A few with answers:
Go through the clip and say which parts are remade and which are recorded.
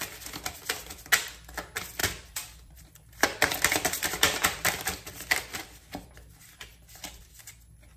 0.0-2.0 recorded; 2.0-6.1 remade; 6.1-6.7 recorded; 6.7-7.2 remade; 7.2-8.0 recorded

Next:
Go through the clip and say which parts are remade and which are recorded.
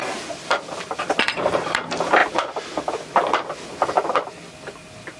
0.0-5.2 recorded